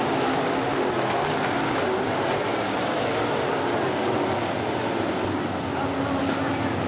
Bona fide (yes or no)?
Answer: yes